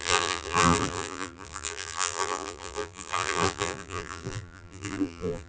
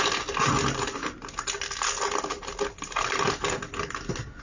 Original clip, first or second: second